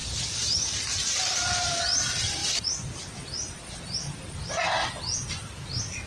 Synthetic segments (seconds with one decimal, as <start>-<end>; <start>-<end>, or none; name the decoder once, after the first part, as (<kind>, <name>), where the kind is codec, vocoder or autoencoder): none